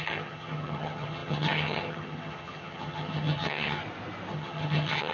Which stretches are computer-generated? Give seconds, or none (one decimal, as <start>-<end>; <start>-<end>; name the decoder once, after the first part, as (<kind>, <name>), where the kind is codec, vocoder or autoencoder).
0.0-3.8 (vocoder, HiFi-GAN); 4.3-5.1